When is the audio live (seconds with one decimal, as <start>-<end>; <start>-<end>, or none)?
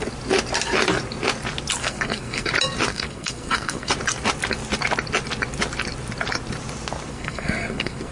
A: 0.0-1.8; 2.5-2.9; 3.9-7.1